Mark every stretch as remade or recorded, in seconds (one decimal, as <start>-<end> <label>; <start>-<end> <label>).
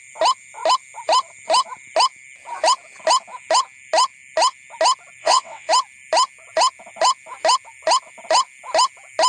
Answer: 0.0-5.2 recorded; 5.2-5.7 remade; 5.7-9.3 recorded